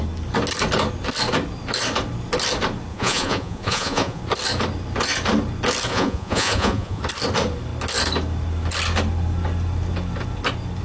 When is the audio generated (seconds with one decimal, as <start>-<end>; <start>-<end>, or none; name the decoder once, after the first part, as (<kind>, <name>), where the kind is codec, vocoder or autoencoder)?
2.9-4.2 (vocoder, Vocos); 5.9-7.0